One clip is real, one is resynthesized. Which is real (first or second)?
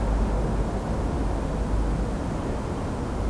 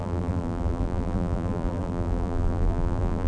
first